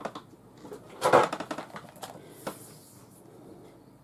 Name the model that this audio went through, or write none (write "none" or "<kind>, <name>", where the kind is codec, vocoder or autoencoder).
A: none